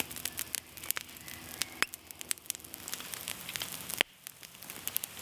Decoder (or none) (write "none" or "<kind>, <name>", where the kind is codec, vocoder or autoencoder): none